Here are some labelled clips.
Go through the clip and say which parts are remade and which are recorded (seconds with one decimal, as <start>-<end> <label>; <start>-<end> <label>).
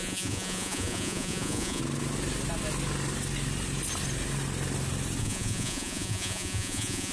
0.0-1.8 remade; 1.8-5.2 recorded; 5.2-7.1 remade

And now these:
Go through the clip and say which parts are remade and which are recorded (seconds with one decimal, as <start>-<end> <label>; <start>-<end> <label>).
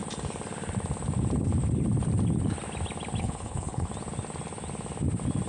0.0-3.2 recorded; 3.2-3.9 remade; 3.9-5.5 recorded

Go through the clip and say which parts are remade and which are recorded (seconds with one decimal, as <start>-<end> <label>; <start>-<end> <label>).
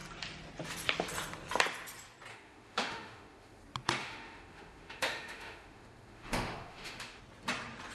0.0-2.3 recorded; 2.3-3.6 remade; 3.6-4.0 recorded; 4.0-7.2 remade; 7.2-7.9 recorded